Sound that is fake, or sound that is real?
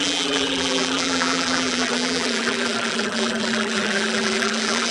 fake